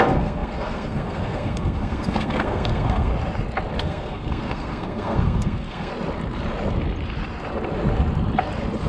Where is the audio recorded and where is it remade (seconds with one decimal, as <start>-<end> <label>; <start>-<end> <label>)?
0.0-3.1 remade; 3.1-3.8 recorded; 3.8-5.9 remade; 5.9-8.9 recorded